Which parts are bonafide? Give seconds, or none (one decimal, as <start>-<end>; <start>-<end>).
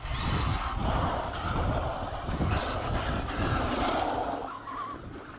0.0-0.8; 2.0-5.4